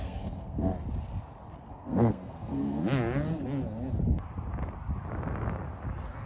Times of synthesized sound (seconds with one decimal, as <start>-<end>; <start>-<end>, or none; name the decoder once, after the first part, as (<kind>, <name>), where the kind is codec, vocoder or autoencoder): 0.0-0.7 (codec, SNAC); 1.7-2.8